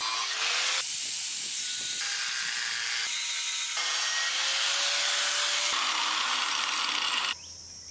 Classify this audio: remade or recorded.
recorded